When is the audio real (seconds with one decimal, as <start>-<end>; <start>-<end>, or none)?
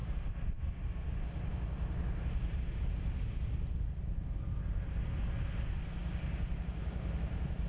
0.0-7.7